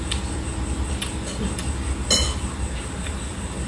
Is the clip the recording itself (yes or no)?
yes